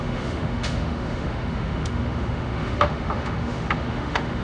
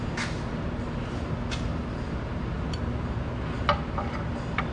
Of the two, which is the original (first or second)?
second